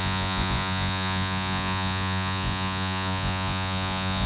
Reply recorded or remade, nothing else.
remade